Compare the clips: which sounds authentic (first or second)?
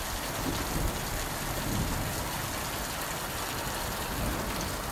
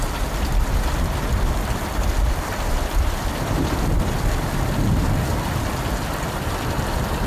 first